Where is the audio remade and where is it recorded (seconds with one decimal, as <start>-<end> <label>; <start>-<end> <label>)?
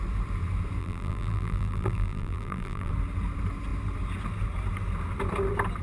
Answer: 0.0-0.8 recorded; 0.8-2.9 remade; 2.9-5.8 recorded